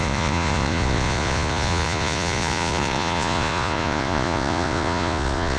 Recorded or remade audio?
remade